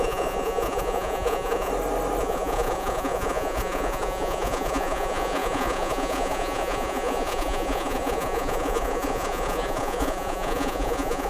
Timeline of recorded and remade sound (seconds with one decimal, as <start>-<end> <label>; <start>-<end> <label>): 0.0-1.7 remade; 1.7-2.2 recorded; 2.2-11.3 remade